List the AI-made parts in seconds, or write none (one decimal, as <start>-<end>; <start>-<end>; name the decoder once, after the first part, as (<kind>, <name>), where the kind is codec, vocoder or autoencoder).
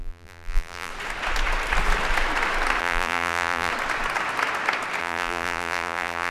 0.0-0.9 (vocoder, BigVGAN v2); 2.8-3.7; 5.0-6.3